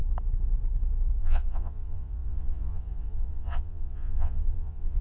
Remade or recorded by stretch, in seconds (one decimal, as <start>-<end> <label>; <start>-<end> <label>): 0.0-1.2 recorded; 1.2-5.0 remade